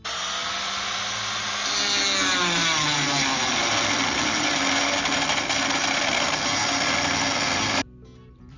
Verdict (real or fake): real